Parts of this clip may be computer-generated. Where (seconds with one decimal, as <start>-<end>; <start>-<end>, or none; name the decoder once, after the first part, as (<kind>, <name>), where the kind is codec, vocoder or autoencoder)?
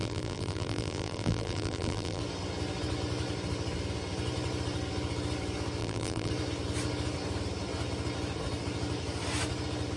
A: 0.0-2.2 (vocoder, BigVGAN v2); 5.8-6.3